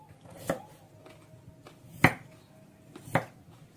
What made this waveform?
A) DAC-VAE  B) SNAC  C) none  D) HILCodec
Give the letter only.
C